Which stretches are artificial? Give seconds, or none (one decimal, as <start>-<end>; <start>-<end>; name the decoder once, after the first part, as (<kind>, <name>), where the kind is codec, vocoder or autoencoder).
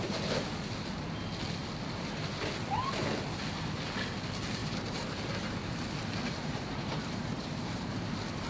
4.6-8.1 (vocoder, BigVGAN v2)